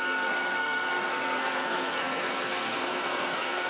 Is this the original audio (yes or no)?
no